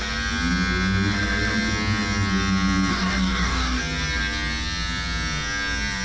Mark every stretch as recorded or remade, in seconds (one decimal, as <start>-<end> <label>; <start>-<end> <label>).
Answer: 0.0-2.9 recorded; 2.9-3.8 remade; 3.8-6.0 recorded